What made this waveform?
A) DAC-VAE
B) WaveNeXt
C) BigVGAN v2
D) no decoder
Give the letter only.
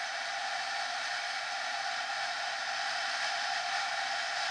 D